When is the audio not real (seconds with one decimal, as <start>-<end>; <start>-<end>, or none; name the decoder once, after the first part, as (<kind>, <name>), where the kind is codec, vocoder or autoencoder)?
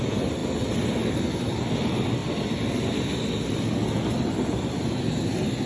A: none